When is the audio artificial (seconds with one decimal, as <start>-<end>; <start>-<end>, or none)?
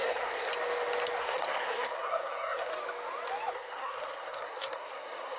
0.0-0.5; 1.2-2.7; 3.5-5.4